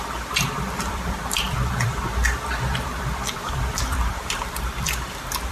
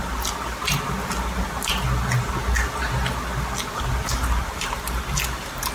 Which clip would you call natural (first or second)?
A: second